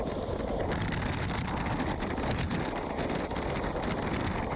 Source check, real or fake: real